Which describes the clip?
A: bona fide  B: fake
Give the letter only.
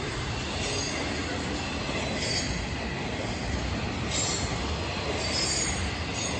A